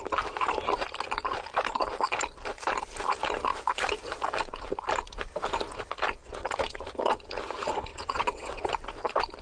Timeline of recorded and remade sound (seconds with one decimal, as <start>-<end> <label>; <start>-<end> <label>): 0.0-6.2 recorded; 6.2-6.8 remade; 6.8-7.9 recorded; 7.9-8.7 remade; 8.7-9.4 recorded